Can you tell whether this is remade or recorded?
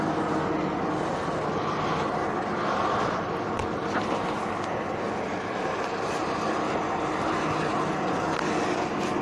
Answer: recorded